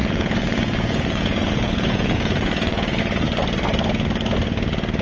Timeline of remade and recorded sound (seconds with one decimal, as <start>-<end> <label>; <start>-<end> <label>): 0.0-3.0 remade; 3.0-5.0 recorded

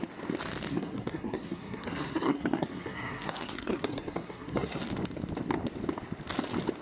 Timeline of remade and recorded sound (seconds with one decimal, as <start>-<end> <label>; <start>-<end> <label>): 0.0-0.7 recorded; 0.7-4.8 remade; 4.8-6.8 recorded

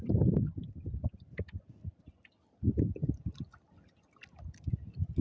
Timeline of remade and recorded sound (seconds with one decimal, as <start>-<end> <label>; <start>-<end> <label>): 0.0-5.2 recorded

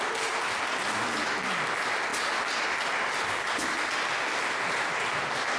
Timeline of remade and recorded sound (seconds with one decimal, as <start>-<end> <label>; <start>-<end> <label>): 0.0-5.6 recorded

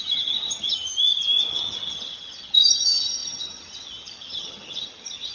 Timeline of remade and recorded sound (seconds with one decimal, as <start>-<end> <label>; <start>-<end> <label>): 0.0-0.9 remade; 0.9-1.5 recorded; 1.5-5.3 remade

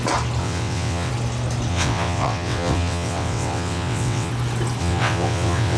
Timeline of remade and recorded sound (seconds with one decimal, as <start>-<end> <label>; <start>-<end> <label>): 0.0-0.4 recorded; 0.4-1.1 remade; 1.1-1.7 recorded; 1.7-4.3 remade; 4.3-4.8 recorded; 4.8-5.8 remade